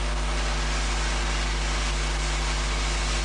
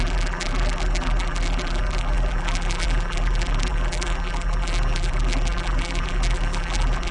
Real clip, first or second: first